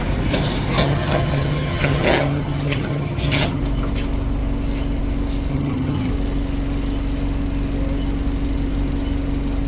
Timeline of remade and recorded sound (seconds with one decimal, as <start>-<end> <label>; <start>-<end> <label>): 0.0-0.8 recorded; 0.8-3.6 remade; 3.6-5.5 recorded; 5.5-6.1 remade; 6.1-9.7 recorded